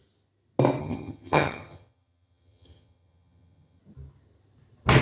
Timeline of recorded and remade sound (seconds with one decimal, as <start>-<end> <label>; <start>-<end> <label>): 0.0-0.8 recorded; 0.8-3.8 remade; 3.8-5.0 recorded